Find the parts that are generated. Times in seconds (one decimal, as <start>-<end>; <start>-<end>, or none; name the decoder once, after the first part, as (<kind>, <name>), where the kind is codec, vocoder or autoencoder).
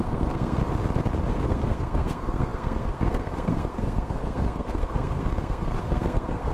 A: 0.0-0.6 (codec, SNAC); 1.3-6.5